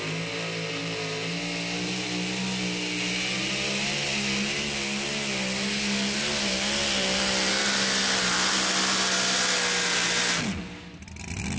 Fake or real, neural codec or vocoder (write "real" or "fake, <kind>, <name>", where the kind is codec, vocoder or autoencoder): real